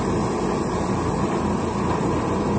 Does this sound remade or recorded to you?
recorded